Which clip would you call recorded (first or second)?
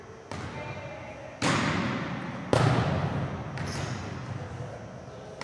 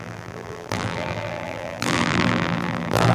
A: first